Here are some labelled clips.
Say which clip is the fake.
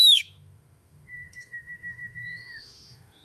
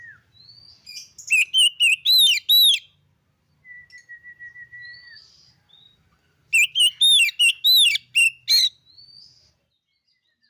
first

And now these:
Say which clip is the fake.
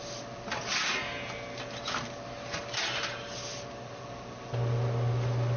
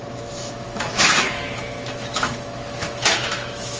second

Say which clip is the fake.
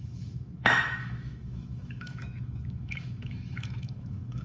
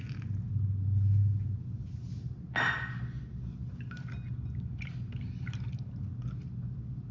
first